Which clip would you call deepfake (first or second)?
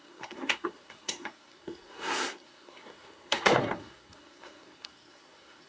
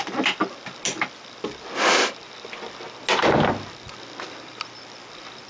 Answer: first